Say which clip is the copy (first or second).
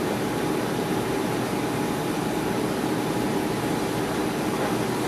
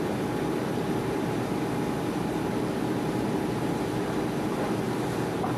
second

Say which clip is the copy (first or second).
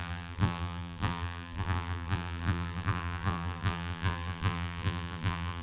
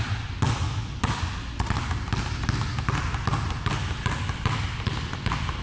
first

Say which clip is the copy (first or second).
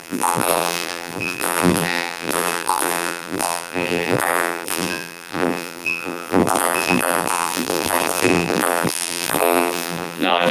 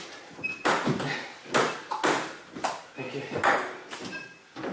first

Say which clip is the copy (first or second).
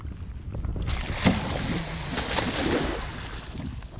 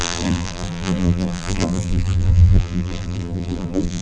second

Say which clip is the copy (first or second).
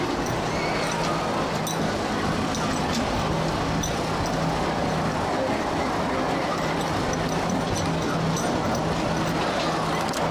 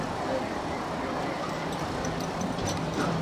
second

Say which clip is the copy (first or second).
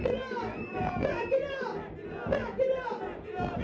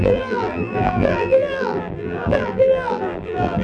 second